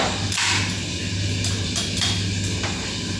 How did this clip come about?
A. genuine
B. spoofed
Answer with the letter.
A